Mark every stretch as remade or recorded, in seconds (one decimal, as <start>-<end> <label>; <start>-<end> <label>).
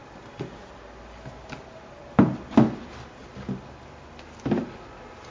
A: 0.0-5.3 recorded